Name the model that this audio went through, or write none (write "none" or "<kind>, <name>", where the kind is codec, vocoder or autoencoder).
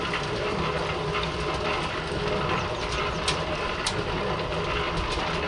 none